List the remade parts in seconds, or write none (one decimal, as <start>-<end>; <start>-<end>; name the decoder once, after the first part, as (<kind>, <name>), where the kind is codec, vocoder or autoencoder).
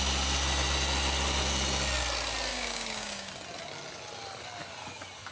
2.5-3.3 (codec, DAC)